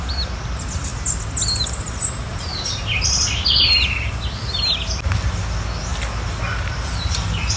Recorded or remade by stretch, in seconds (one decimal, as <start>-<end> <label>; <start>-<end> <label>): 0.0-2.3 recorded; 2.3-3.0 remade; 3.0-7.6 recorded